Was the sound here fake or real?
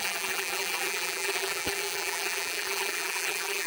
fake